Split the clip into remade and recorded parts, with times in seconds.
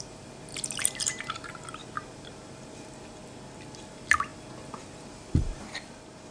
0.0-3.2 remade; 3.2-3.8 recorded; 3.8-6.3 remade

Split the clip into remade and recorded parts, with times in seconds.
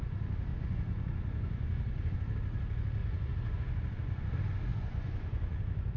0.0-0.5 recorded; 0.5-2.2 remade; 2.2-3.0 recorded; 3.0-4.2 remade; 4.2-4.7 recorded; 4.7-5.6 remade; 5.6-6.0 recorded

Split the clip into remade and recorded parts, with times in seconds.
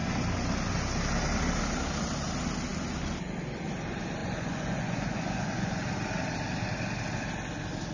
0.0-4.2 recorded; 4.2-5.9 remade; 5.9-7.9 recorded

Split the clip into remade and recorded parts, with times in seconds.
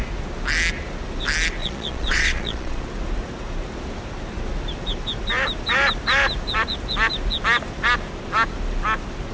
0.0-1.6 recorded; 1.6-2.8 remade; 2.8-9.3 recorded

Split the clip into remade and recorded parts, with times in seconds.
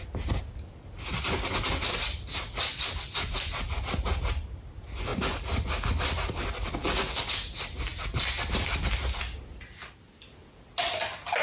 0.0-11.4 recorded